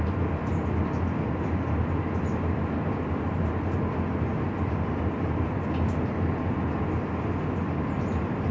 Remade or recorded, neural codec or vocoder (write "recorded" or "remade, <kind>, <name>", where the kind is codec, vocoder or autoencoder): recorded